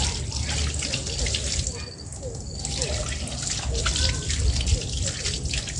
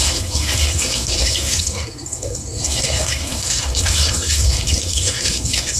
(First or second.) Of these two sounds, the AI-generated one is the second